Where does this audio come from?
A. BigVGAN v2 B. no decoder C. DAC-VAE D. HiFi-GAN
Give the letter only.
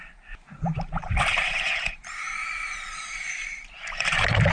A